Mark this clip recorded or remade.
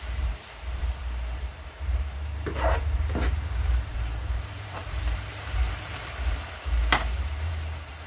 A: remade